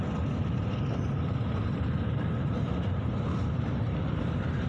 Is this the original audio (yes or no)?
no